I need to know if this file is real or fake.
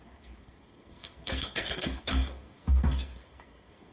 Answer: fake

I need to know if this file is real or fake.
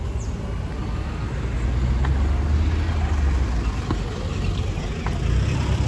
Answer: real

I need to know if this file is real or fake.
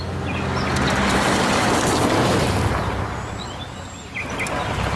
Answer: real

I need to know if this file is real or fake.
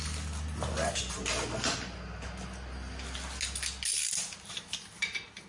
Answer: real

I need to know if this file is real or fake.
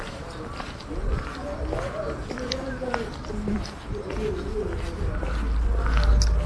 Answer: real